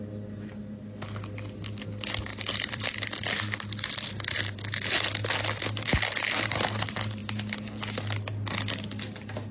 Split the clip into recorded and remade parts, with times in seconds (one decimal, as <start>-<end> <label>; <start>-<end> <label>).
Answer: 0.0-2.3 recorded; 2.3-3.2 remade; 3.2-9.5 recorded